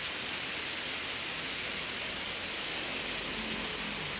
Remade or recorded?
recorded